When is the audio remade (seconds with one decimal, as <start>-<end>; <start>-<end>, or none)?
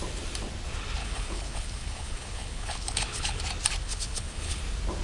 1.0-3.4; 3.8-4.6